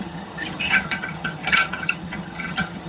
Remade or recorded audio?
remade